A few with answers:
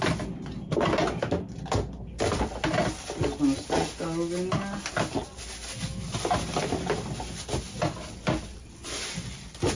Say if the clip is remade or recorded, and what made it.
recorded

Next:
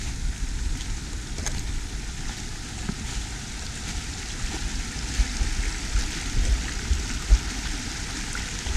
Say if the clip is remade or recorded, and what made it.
recorded